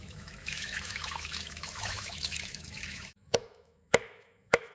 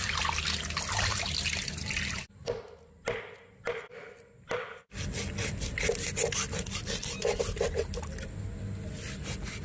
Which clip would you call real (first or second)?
second